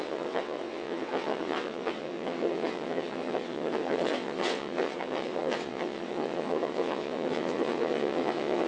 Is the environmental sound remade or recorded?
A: remade